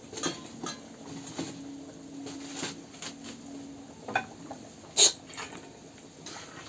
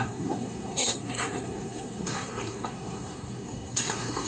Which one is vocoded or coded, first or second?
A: second